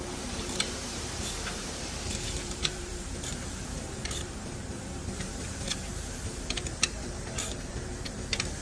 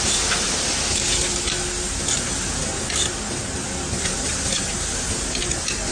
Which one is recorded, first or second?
second